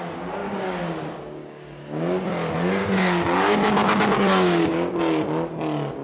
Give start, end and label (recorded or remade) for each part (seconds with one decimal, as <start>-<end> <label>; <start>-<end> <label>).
0.0-0.4 recorded; 0.4-2.2 remade; 2.2-2.8 recorded; 2.8-5.0 remade; 5.0-6.0 recorded